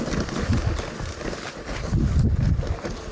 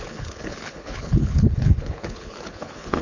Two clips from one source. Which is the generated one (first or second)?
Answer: second